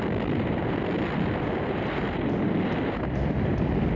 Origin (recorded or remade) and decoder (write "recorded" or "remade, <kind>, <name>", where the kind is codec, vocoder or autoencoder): recorded